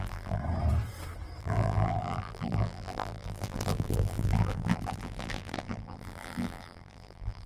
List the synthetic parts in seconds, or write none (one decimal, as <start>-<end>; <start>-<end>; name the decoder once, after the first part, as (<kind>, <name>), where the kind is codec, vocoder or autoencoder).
0.0-0.4 (vocoder, BigVGAN v2); 1.4-7.5